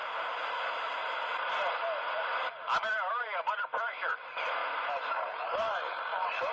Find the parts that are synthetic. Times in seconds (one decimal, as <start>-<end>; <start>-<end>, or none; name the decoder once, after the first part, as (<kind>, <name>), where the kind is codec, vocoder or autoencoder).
0.0-1.0 (vocoder, BigVGAN v2); 3.5-6.5